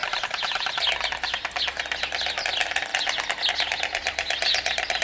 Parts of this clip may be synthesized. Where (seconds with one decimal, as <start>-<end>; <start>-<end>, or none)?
none